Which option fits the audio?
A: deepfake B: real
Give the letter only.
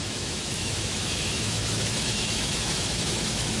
A